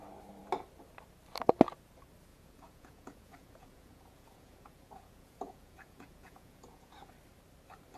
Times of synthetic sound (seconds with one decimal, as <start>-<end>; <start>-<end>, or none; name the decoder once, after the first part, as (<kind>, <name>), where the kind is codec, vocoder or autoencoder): 2.3-7.1 (vocoder, Vocos)